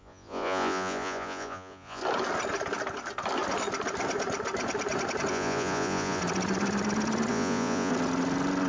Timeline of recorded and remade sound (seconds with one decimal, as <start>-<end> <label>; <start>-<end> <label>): 0.0-2.0 remade; 2.0-5.3 recorded; 5.3-6.2 remade; 6.2-7.3 recorded; 7.3-7.9 remade; 7.9-8.7 recorded